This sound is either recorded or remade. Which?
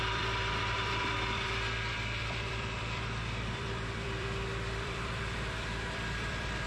remade